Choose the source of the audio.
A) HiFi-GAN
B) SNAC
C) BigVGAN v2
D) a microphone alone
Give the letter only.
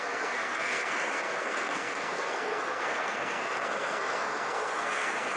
B